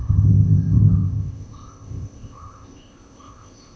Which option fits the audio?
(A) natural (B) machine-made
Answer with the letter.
B